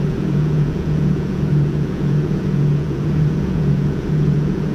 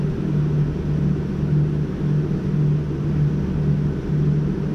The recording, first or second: second